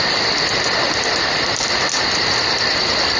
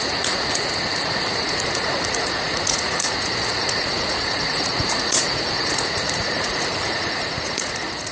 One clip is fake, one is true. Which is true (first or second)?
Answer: first